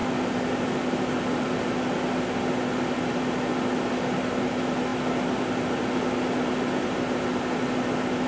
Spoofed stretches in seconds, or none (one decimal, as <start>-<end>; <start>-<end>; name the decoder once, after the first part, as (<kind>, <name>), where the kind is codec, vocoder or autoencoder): none